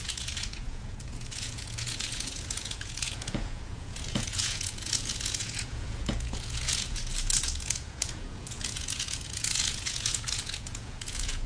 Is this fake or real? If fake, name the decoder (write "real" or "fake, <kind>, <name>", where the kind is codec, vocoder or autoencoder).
fake, vocoder, Vocos